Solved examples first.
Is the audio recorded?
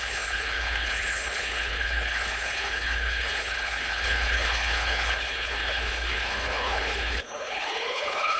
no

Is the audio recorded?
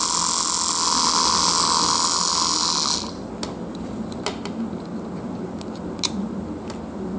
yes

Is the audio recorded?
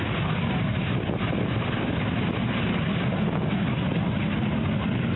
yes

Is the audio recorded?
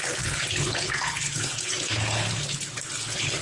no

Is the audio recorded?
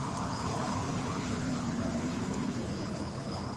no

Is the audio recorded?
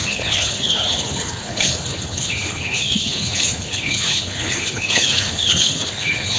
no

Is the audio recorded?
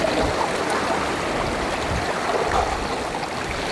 yes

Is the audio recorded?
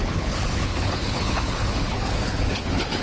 no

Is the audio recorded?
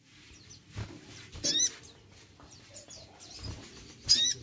yes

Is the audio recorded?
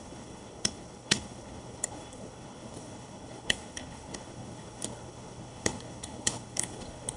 no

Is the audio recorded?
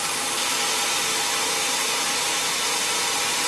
yes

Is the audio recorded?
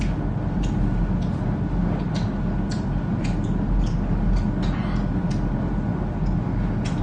yes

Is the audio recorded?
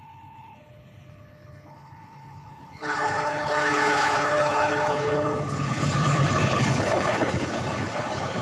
no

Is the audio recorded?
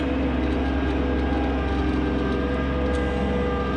yes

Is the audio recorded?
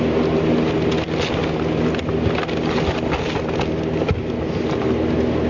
yes